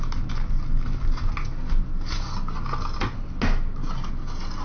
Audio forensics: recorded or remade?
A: recorded